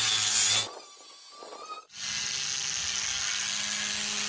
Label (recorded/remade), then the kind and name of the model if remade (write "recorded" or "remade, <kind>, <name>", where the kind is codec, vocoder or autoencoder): recorded